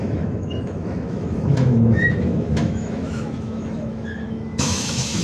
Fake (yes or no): yes